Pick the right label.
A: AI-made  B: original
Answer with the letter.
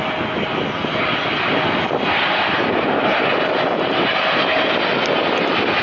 B